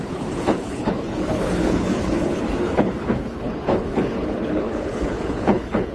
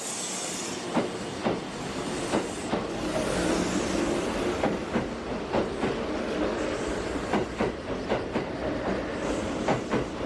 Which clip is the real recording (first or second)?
second